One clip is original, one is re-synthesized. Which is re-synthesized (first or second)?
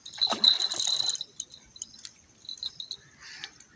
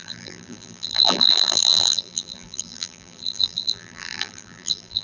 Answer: second